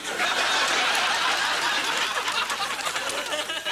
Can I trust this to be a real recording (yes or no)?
yes